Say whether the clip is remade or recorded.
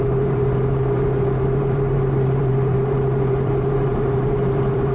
remade